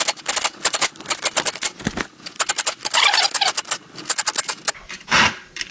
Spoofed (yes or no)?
no